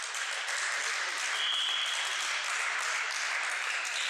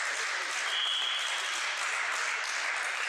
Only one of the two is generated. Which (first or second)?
first